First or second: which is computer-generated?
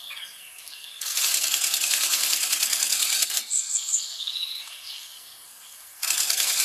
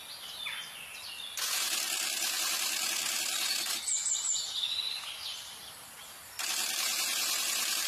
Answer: first